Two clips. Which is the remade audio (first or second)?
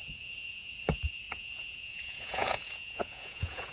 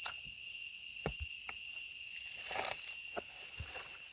first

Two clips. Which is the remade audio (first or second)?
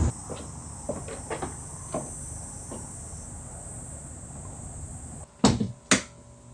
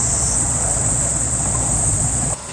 second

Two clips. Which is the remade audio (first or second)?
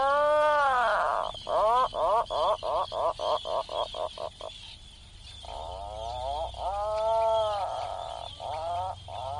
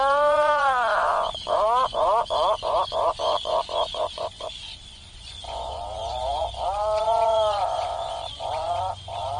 second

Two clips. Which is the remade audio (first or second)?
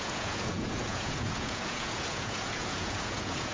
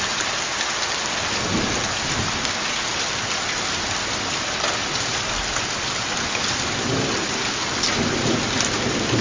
first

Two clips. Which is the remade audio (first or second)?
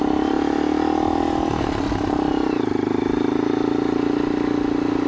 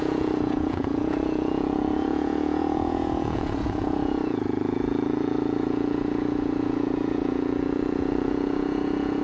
second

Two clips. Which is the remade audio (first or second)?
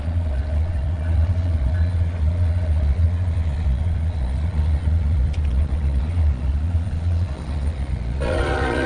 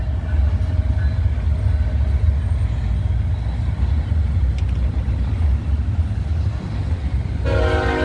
first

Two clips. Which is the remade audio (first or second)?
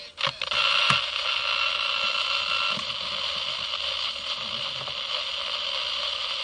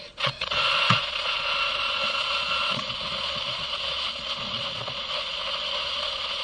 second